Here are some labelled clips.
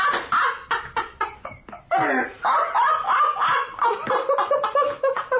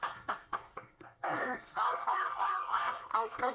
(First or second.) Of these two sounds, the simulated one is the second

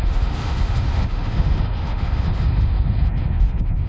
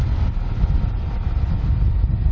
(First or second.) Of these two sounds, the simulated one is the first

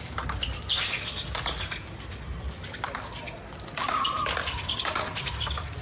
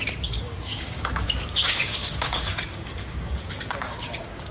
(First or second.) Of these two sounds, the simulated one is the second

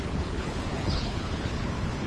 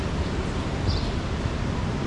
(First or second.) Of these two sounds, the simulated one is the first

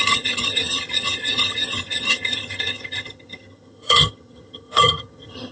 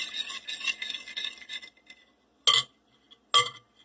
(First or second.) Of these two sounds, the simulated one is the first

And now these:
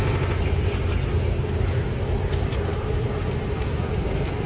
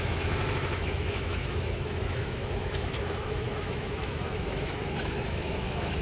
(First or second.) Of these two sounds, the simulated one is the second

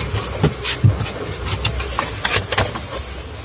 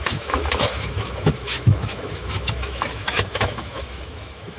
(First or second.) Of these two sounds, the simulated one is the second